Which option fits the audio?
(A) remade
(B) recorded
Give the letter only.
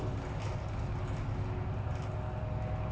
B